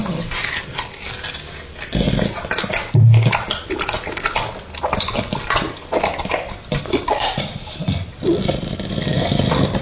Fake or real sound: real